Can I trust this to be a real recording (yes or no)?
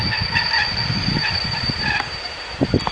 yes